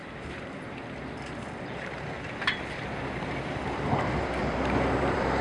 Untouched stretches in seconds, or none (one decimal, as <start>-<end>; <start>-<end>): none